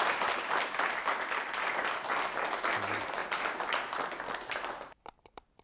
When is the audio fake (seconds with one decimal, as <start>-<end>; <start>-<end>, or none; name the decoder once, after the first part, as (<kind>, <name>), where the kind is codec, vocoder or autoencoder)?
none